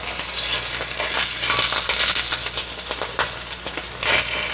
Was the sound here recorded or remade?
recorded